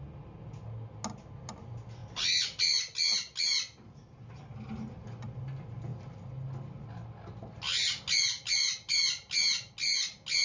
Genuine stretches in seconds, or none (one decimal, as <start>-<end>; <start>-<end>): 0.0-10.4